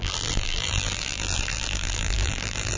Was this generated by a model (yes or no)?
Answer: yes